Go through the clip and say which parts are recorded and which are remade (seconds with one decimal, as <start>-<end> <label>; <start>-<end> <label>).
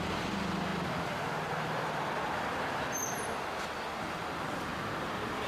0.0-0.7 recorded; 0.7-4.0 remade; 4.0-4.7 recorded; 4.7-5.5 remade